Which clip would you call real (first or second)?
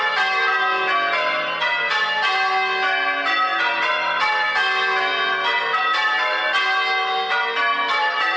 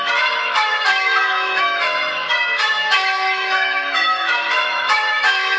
first